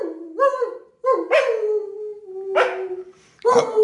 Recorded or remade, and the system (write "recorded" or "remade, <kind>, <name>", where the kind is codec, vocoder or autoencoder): recorded